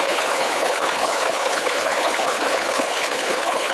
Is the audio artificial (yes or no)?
yes